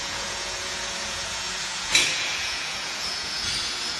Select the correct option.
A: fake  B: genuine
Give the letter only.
A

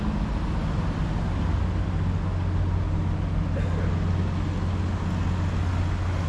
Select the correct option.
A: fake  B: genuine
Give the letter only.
B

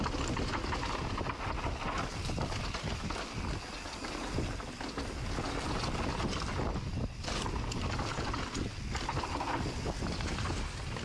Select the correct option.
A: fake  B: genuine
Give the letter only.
B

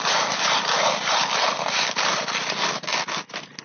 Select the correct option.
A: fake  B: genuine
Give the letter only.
B